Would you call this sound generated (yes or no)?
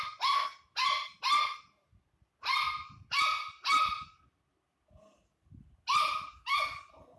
no